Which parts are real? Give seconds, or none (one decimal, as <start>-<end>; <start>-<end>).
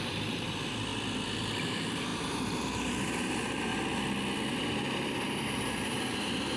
0.9-1.6; 3.7-4.5